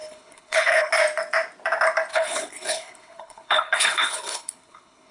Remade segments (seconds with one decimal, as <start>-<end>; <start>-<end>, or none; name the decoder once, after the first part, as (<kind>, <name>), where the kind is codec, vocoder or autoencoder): 0.0-0.9 (codec, HILCodec); 2.1-5.1